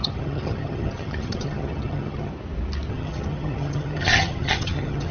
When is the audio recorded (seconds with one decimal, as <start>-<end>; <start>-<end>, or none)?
2.3-2.9